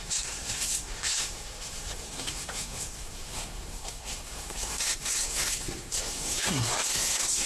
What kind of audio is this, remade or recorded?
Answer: remade